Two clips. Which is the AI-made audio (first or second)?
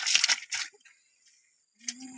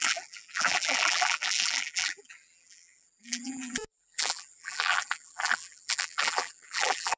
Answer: second